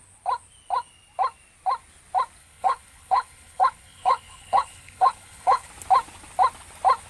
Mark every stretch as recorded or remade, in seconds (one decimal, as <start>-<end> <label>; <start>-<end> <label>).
0.0-2.4 recorded; 2.4-5.7 remade; 5.7-7.1 recorded